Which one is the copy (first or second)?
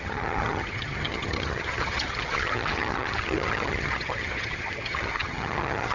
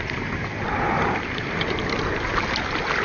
first